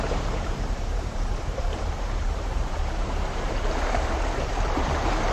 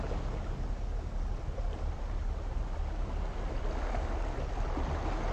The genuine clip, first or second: second